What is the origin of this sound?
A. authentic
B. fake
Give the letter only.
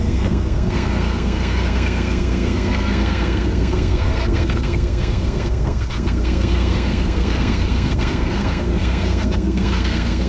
B